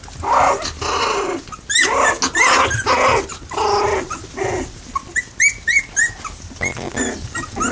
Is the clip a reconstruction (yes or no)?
no